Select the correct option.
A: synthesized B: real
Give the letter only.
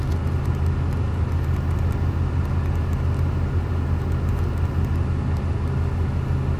B